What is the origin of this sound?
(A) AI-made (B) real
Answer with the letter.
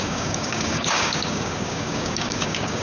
A